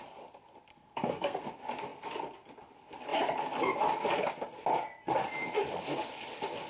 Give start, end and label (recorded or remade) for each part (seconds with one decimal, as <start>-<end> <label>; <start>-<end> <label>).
0.0-0.7 recorded; 0.7-1.4 remade; 1.4-6.7 recorded